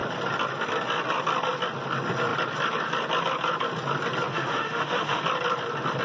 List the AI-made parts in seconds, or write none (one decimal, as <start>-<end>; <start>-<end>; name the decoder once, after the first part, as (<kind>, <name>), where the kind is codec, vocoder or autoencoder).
4.3-5.2 (autoencoder, DAC-VAE)